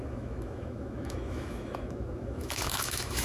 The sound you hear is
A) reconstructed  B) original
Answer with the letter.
A